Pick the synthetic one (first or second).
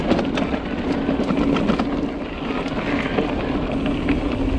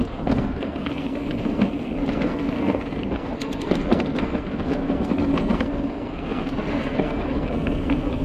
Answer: second